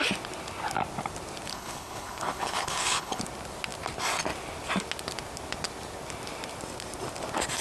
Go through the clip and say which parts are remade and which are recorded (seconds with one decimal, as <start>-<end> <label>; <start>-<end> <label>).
0.0-1.5 recorded; 1.5-3.2 remade; 3.2-7.6 recorded